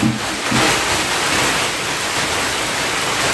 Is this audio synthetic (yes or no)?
no